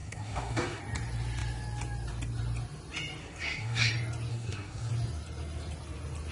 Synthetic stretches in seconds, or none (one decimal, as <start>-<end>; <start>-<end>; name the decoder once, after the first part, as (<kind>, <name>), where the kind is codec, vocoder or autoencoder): 0.0-0.8 (codec, SNAC); 3.2-3.9; 4.3-4.9